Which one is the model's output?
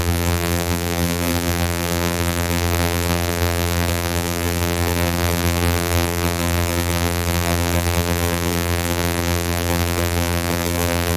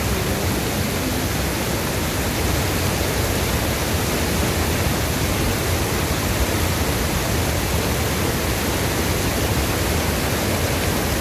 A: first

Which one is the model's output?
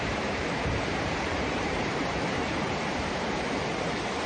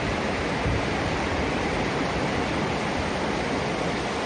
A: first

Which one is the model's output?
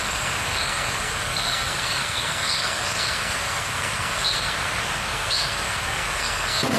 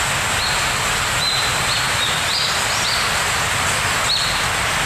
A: first